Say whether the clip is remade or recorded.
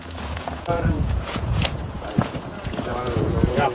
remade